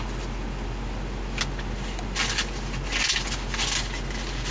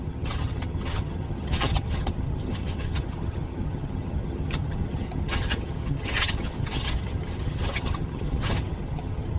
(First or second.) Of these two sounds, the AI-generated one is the second